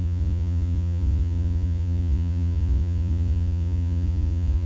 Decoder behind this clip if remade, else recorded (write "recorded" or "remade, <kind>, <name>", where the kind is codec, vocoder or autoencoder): remade, vocoder, Vocos